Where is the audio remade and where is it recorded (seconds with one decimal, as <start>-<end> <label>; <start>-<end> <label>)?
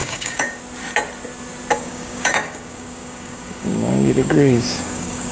0.0-0.6 remade; 0.6-1.7 recorded; 1.7-5.3 remade